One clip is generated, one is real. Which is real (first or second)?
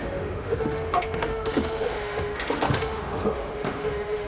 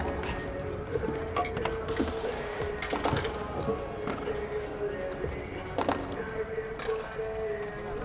second